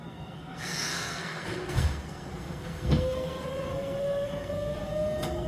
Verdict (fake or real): fake